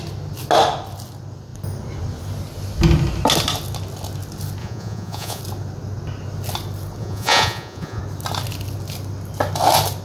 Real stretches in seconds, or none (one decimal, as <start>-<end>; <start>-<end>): 0.0-4.6; 5.4-7.0; 8.0-10.0